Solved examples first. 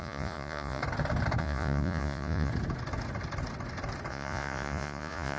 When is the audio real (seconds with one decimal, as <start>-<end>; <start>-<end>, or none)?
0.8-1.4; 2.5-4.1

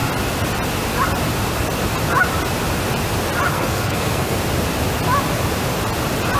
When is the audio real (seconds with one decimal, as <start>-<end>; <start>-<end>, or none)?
0.0-3.5; 4.4-6.4

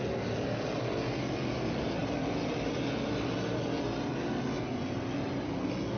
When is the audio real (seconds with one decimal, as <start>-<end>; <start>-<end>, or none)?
0.0-6.0

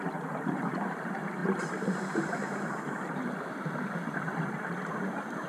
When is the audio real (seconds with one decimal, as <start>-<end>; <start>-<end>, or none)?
none

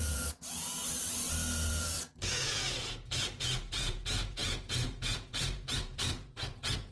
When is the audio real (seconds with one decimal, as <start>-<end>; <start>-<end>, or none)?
0.8-1.7

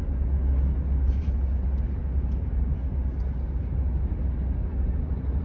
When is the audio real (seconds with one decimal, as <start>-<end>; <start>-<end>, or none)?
0.0-5.4

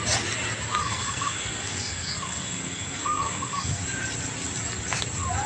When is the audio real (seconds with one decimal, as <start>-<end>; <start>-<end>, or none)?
0.0-0.8; 3.8-5.5

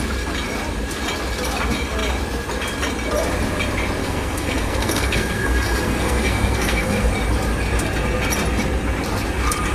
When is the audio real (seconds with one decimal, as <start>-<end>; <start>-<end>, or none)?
0.0-4.0; 7.1-9.7